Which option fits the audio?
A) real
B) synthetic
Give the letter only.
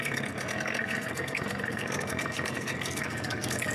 B